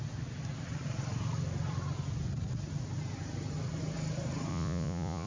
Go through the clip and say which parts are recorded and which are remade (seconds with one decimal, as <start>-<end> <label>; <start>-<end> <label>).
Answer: 0.0-4.5 recorded; 4.5-5.3 remade